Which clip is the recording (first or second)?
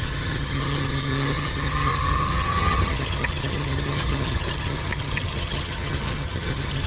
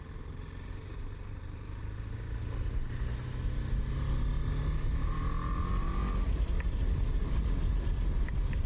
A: second